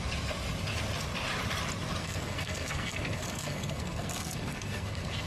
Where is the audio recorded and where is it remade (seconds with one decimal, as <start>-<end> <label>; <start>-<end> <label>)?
0.0-2.0 recorded; 2.0-5.3 remade